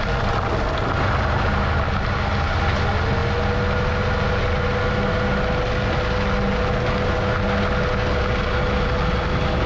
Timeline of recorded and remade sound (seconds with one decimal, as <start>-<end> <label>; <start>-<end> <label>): 0.0-9.7 recorded